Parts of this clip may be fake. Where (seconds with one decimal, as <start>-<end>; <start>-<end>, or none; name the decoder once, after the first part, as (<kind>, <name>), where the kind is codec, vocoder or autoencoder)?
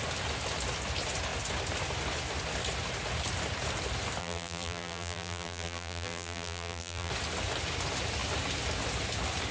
4.2-7.1 (vocoder, BigVGAN v2)